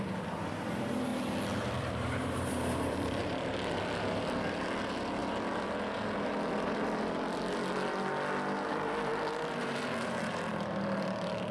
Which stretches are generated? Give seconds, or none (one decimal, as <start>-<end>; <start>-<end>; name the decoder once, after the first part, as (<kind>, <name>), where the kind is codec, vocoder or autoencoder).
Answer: 0.0-1.1 (vocoder, BigVGAN v2); 1.6-5.2; 8.7-11.5